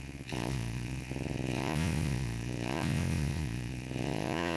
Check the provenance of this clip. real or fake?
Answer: fake